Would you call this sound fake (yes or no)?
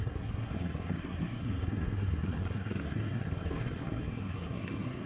yes